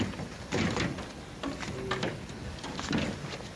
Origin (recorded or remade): recorded